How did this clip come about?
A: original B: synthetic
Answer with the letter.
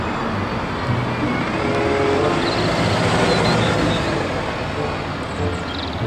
A